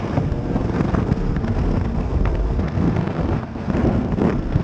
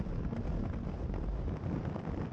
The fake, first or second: first